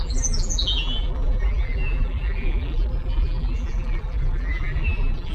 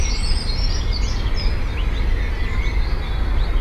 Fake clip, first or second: first